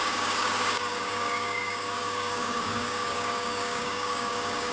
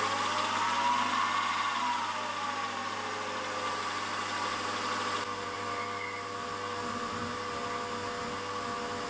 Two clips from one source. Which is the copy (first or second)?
first